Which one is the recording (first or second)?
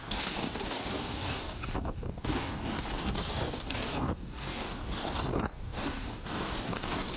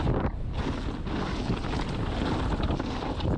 second